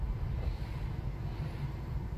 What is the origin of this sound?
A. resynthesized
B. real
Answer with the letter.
A